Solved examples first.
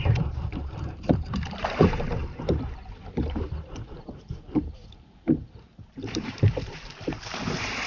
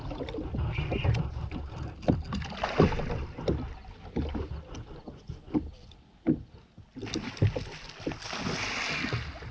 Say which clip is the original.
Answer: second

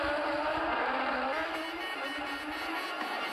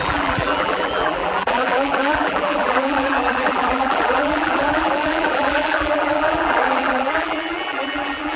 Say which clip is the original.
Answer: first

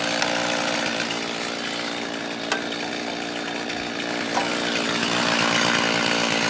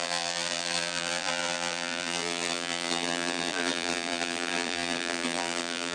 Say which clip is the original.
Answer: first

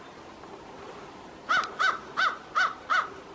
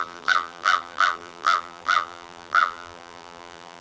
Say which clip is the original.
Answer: first